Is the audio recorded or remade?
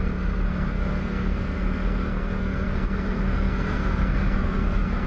remade